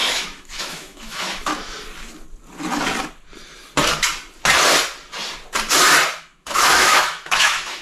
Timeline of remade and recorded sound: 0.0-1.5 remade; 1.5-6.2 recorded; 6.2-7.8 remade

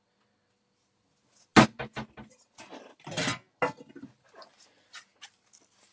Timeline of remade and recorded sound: 0.0-5.9 recorded

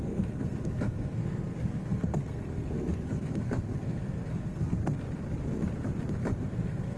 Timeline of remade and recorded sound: 0.0-4.8 remade; 4.8-6.4 recorded; 6.4-7.0 remade

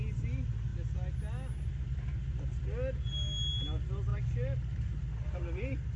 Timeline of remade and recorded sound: 0.0-4.1 recorded; 4.1-6.0 remade